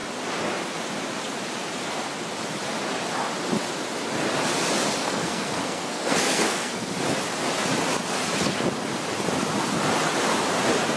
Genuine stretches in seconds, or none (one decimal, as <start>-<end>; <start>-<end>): 0.0-5.0; 6.9-11.0